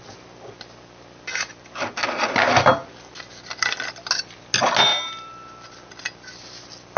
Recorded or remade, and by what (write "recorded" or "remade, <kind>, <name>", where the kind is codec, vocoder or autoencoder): recorded